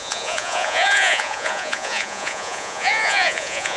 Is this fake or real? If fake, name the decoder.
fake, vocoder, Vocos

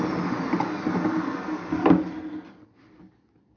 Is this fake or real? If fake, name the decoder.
real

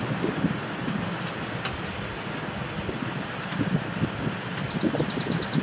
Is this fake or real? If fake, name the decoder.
real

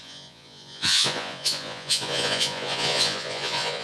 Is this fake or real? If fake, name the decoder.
fake, vocoder, Vocos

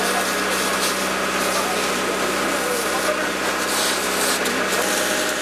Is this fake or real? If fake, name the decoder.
real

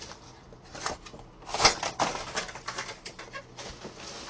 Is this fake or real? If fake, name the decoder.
real